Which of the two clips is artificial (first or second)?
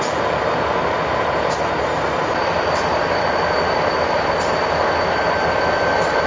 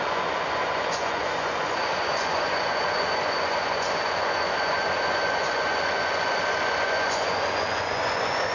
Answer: second